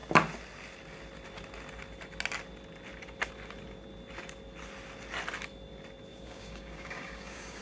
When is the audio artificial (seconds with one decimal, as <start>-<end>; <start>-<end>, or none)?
6.1-7.6